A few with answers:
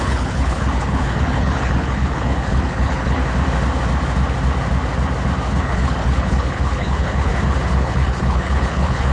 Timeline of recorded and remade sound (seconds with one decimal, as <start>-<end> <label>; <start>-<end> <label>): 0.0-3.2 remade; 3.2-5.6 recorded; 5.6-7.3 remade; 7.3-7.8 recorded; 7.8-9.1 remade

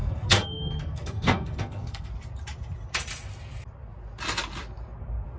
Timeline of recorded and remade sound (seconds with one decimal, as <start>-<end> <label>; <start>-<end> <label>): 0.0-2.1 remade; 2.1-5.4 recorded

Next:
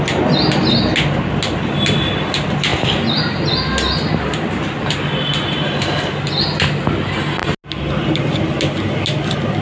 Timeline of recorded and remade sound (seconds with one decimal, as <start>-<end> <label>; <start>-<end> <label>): 0.0-9.6 recorded

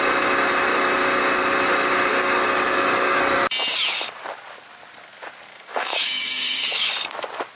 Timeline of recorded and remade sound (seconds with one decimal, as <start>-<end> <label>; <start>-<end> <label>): 0.0-2.1 recorded; 2.1-3.2 remade; 3.2-5.5 recorded; 5.5-6.9 remade; 6.9-7.6 recorded